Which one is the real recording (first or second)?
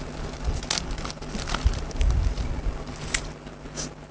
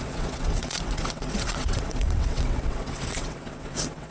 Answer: first